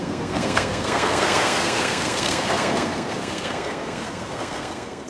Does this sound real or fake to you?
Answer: fake